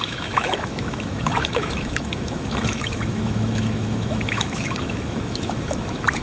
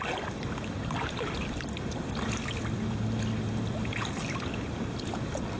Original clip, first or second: second